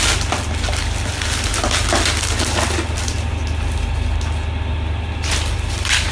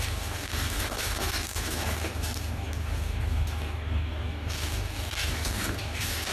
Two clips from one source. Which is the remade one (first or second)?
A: second